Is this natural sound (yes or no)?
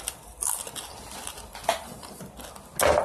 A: yes